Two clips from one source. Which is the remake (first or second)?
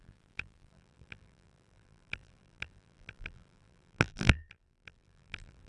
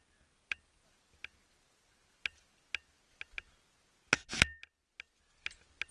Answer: first